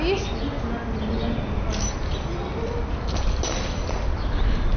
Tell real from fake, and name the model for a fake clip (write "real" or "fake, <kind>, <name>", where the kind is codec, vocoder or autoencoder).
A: real